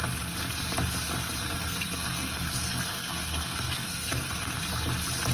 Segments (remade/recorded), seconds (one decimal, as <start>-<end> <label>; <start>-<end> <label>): 0.0-1.4 recorded; 1.4-4.6 remade; 4.6-5.3 recorded